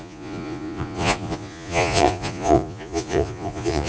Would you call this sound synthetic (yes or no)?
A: yes